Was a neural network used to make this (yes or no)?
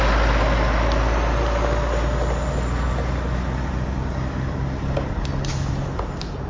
no